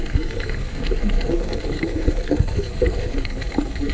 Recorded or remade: remade